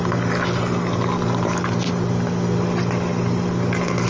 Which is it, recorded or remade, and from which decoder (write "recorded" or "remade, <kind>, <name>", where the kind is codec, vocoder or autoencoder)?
recorded